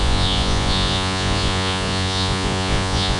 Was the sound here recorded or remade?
remade